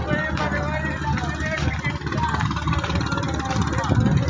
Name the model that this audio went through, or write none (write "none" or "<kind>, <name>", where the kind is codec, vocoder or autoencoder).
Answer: none